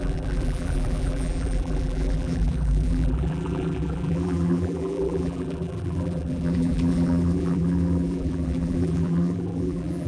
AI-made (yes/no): yes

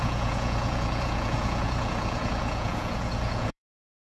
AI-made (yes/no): yes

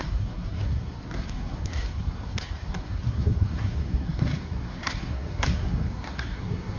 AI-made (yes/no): yes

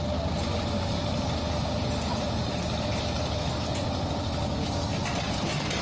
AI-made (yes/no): no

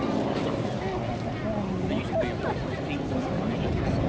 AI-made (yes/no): no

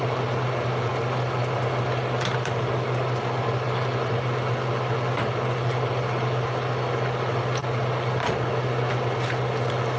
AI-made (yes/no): no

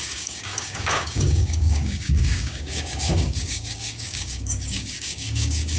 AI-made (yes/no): yes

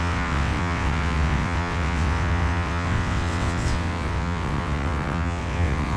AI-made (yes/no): yes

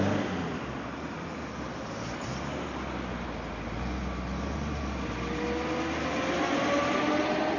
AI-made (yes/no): no